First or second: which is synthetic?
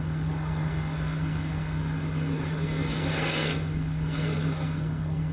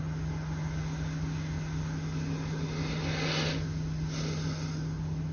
first